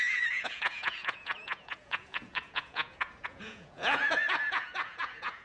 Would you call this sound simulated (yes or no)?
yes